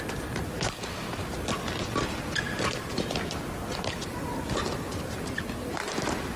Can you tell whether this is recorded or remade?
recorded